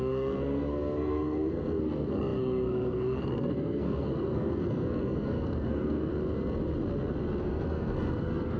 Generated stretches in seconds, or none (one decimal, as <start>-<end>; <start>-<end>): 0.0-6.1; 7.4-8.6